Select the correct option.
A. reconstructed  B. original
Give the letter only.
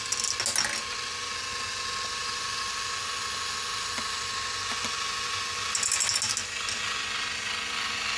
B